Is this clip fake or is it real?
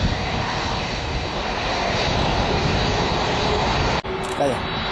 real